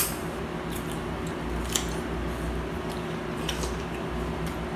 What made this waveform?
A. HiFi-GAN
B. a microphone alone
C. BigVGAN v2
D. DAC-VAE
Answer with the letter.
B